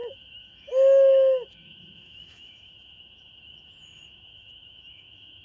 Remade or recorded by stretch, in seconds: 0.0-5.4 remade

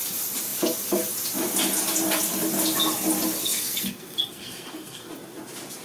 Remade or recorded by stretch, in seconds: 0.0-3.4 recorded; 3.4-5.1 remade; 5.1-5.8 recorded